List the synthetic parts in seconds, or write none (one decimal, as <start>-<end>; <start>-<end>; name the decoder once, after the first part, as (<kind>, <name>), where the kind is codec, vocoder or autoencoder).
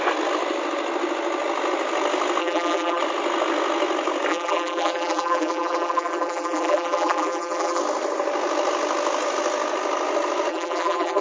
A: 2.4-3.0 (vocoder, BigVGAN v2); 4.3-7.8; 10.5-11.2